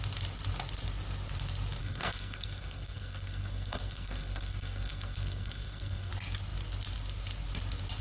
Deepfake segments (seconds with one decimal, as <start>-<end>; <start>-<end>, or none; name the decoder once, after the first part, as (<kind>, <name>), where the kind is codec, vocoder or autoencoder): 1.8-6.1 (codec, SNAC)